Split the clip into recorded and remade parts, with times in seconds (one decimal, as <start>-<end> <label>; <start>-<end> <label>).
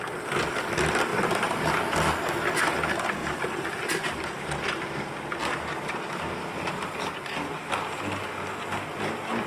0.0-1.1 recorded; 1.1-1.7 remade; 1.7-3.2 recorded; 3.2-4.9 remade; 4.9-5.4 recorded; 5.4-7.7 remade; 7.7-9.5 recorded